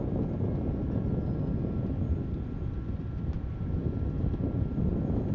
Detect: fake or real real